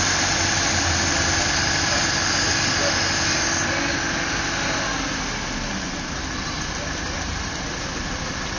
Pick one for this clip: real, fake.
fake